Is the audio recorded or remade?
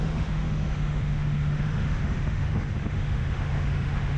remade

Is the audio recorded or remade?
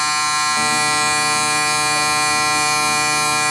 recorded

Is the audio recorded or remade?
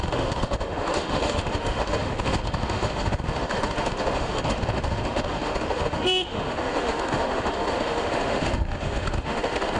remade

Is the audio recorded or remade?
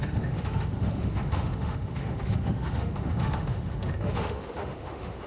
remade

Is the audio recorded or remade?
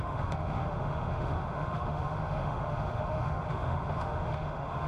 remade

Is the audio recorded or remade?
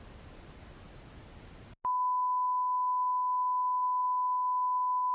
recorded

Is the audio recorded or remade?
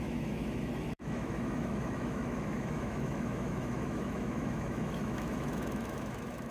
remade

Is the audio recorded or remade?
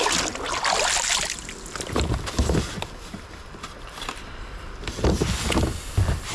recorded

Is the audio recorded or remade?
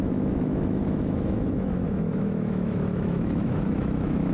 remade